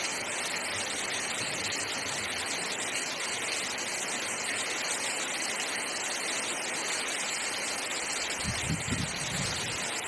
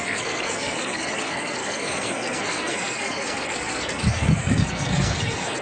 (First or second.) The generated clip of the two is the second